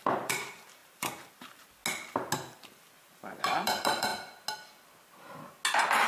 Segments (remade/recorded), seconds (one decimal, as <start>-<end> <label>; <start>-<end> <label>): 0.0-1.8 remade; 1.8-2.5 recorded; 2.5-4.1 remade; 4.1-6.1 recorded